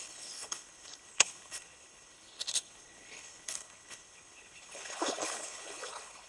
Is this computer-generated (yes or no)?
yes